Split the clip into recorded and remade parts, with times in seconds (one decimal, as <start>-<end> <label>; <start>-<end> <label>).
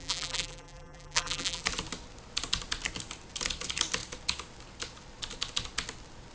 0.0-1.6 remade; 1.6-6.3 recorded